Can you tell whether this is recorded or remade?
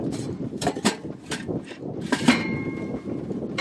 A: remade